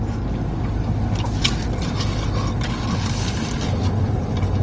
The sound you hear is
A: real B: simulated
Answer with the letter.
A